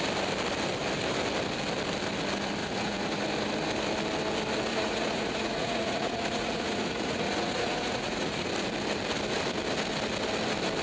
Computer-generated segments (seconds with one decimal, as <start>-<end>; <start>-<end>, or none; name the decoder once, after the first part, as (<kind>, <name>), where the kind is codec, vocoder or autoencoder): 2.6-3.2 (vocoder, Vocos); 4.7-8.5